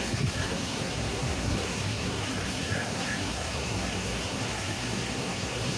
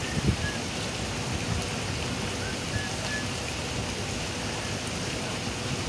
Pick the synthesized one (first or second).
first